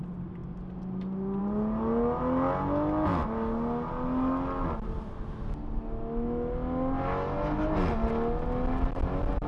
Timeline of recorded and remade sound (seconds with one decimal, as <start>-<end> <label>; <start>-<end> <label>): 0.0-9.5 recorded